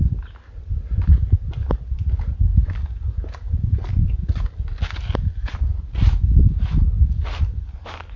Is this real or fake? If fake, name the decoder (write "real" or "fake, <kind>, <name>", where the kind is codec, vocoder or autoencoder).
real